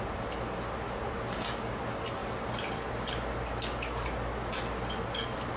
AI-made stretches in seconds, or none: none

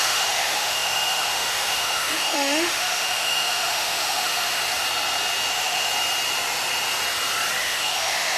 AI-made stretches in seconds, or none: 0.0-4.6 (autoencoder, DAC-VAE); 5.5-5.9; 7.6-8.4